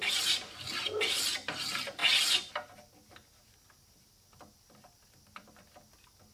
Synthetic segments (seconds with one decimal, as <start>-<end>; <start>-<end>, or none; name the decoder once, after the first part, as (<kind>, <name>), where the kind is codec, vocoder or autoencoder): none